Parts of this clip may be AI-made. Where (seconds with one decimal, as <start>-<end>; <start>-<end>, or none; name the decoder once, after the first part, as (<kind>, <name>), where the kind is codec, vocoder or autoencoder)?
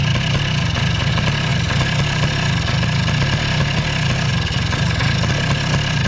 none